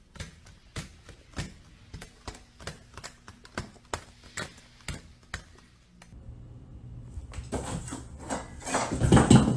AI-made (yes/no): no